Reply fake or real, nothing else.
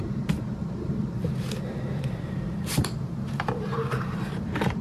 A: fake